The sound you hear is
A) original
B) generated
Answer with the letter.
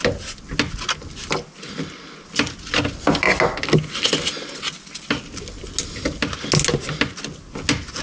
A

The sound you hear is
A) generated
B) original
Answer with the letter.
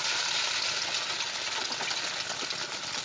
B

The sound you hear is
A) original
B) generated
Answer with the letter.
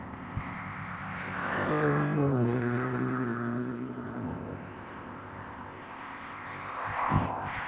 B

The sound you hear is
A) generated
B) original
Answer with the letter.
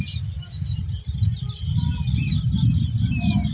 B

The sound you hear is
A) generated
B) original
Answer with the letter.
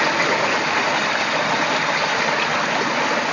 B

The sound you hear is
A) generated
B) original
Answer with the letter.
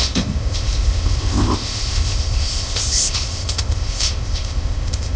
A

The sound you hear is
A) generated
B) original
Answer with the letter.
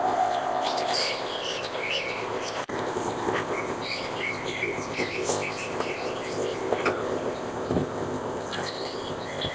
A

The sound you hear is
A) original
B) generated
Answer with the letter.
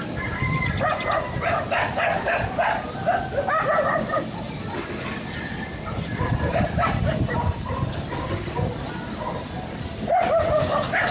A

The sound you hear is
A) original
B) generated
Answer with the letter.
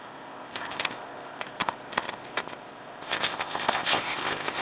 B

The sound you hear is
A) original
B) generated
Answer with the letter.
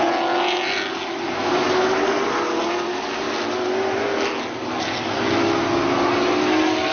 A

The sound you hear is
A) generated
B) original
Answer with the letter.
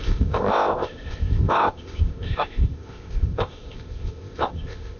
A